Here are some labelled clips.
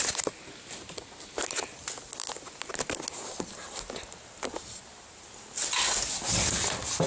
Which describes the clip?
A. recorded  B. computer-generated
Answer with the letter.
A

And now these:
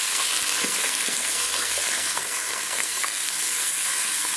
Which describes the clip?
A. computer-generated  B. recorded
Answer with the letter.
A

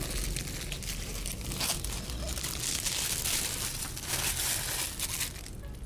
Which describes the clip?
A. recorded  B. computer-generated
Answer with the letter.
A